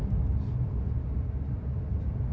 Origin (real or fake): real